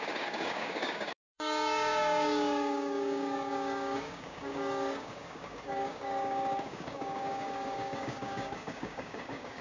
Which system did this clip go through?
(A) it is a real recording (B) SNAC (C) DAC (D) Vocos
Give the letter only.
C